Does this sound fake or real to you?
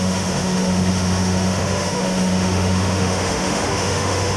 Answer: fake